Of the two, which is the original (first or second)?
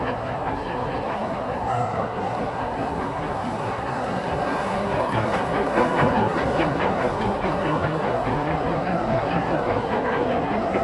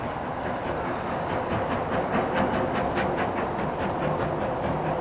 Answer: second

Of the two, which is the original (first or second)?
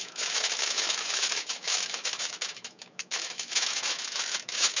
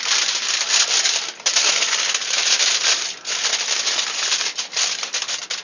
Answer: second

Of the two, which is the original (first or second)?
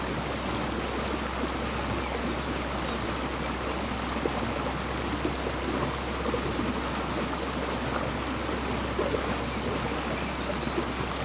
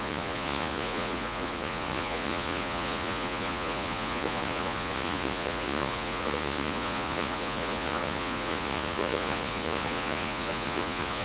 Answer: first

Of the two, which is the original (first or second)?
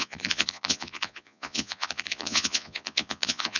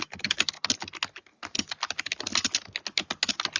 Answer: second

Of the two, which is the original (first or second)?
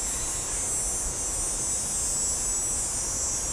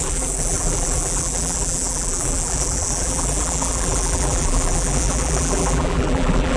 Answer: first